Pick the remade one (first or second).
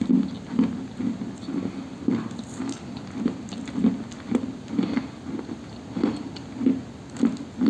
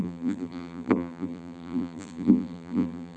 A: second